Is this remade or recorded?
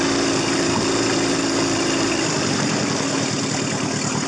recorded